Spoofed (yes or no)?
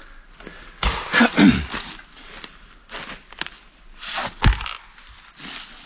no